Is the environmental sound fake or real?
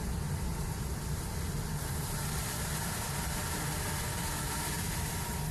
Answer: real